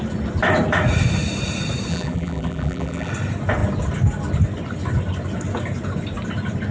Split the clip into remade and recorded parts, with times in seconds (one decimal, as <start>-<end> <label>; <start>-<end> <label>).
0.0-1.9 recorded; 1.9-3.1 remade; 3.1-6.7 recorded